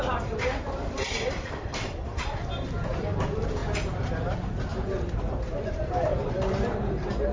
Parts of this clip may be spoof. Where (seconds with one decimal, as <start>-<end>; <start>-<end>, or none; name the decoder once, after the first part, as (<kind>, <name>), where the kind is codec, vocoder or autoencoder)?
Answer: 0.0-3.6 (vocoder, BigVGAN v2); 4.1-7.3